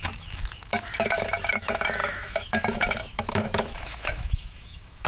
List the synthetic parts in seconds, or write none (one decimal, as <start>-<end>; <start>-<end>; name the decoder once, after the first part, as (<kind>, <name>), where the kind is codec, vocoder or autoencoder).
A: 0.0-5.1 (autoencoder, DAC-VAE)